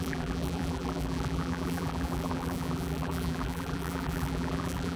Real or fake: fake